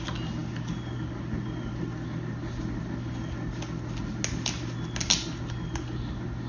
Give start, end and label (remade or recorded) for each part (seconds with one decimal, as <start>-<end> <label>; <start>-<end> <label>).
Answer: 0.0-6.5 recorded